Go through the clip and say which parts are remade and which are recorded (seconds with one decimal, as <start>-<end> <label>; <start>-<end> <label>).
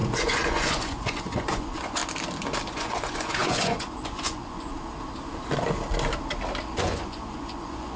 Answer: 0.0-2.0 remade; 2.0-2.7 recorded; 2.7-4.7 remade; 4.7-6.8 recorded; 6.8-8.0 remade